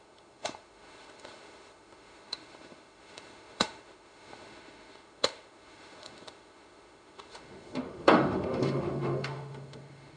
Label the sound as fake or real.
fake